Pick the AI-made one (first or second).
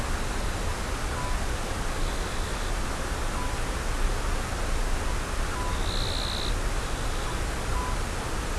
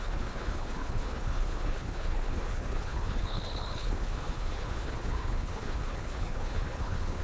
second